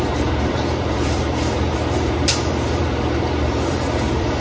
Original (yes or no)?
no